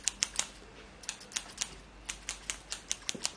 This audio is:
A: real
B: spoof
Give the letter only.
A